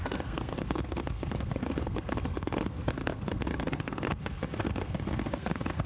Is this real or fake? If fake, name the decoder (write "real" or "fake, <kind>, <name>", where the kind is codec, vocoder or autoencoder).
fake, codec, SNAC